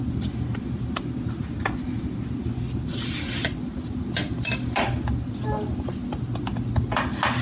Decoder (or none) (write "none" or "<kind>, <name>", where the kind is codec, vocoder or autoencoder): none